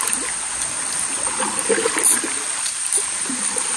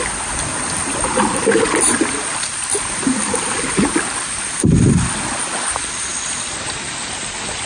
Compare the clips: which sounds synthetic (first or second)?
second